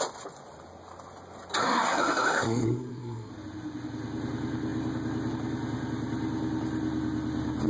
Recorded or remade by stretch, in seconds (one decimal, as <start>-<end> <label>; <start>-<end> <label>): 0.0-1.6 recorded; 1.6-3.3 remade; 3.3-7.7 recorded